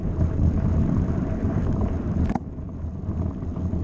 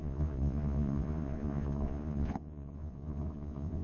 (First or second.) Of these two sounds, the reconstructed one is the second